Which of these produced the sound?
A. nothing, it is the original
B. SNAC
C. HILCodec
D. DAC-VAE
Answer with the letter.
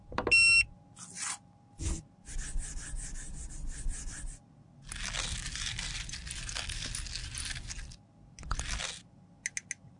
A